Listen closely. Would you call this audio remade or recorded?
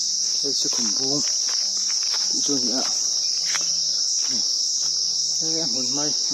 recorded